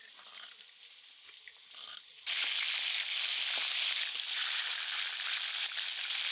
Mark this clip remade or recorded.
recorded